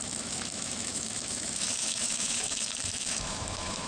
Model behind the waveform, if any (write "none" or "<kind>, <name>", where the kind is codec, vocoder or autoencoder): autoencoder, DAC-VAE